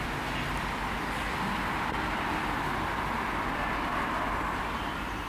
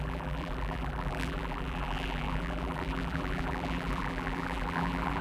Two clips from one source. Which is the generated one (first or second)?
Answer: second